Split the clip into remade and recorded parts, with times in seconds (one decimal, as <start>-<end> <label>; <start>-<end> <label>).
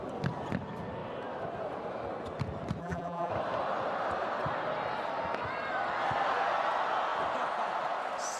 0.0-2.8 recorded; 2.8-3.3 remade; 3.3-8.4 recorded